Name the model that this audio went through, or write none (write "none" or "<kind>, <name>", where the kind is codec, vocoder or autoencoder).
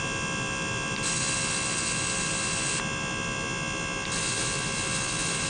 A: none